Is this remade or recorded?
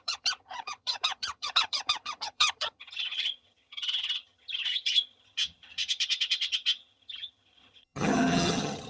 remade